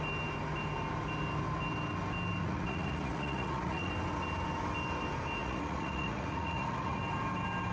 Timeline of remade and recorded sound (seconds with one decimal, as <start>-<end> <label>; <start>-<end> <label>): 0.0-2.4 recorded; 2.4-3.9 remade; 3.9-5.4 recorded; 5.4-7.0 remade; 7.0-7.7 recorded